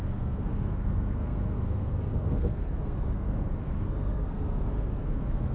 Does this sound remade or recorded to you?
remade